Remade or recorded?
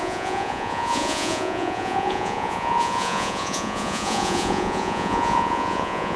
remade